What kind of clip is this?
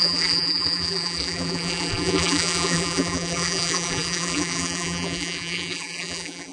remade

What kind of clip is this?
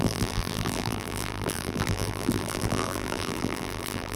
remade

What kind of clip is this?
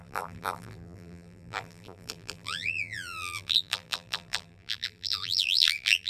remade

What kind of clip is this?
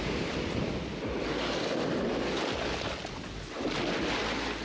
recorded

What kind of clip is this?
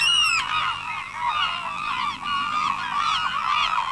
remade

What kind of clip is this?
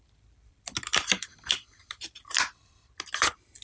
remade